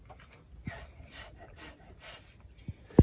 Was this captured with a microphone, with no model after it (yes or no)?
yes